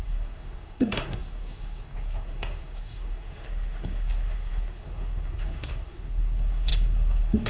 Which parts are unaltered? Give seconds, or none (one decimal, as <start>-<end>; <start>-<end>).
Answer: none